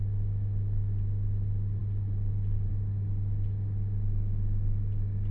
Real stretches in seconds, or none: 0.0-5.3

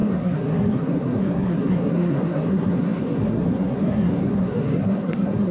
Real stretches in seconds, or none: none

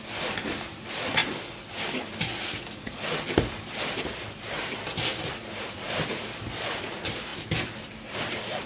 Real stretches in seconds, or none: 0.0-8.7